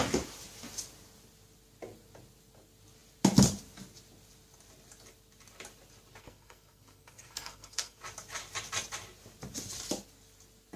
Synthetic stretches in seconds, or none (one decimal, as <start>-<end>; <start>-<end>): 6.2-8.0